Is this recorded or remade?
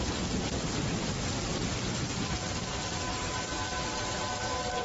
recorded